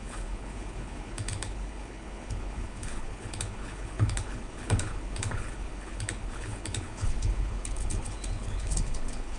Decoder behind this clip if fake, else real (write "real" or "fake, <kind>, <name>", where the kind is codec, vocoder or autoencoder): fake, codec, HILCodec